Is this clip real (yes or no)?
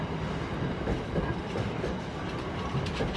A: yes